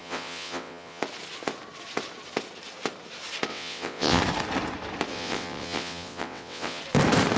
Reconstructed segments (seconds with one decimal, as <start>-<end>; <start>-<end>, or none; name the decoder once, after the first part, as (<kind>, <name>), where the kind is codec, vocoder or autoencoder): 0.0-1.0 (vocoder, WaveNeXt); 3.5-4.2; 5.1-6.8